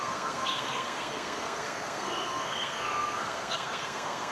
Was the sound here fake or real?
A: fake